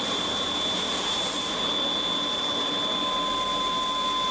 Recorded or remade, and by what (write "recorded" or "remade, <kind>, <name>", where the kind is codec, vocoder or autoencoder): recorded